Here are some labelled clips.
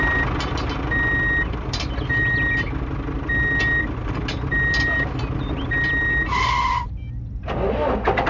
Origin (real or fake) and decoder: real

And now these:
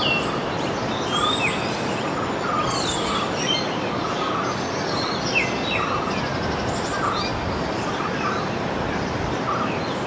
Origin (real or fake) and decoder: real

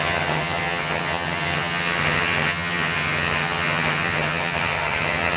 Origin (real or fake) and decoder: fake, vocoder, HiFi-GAN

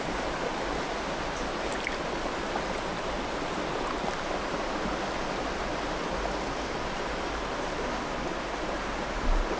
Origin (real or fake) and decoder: real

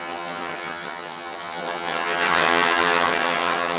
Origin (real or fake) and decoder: fake, vocoder, HiFi-GAN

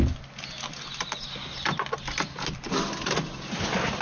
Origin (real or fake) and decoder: real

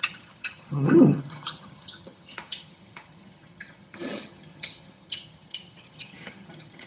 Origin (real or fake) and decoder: fake, vocoder, HiFi-GAN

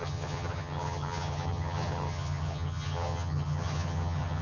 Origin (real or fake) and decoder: fake, vocoder, HiFi-GAN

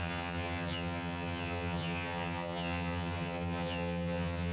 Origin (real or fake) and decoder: fake, vocoder, HiFi-GAN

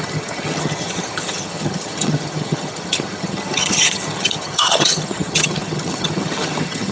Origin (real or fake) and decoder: fake, vocoder, HiFi-GAN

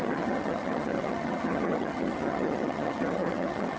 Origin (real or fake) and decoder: fake, vocoder, HiFi-GAN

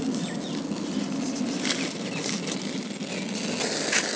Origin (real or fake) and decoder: real